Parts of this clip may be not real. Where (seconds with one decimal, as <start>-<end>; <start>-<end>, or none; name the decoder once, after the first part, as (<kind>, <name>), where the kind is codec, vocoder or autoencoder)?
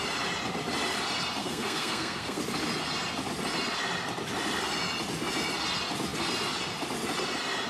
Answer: 1.4-2.4 (codec, SNAC)